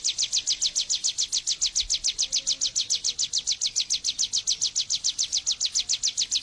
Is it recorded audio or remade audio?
recorded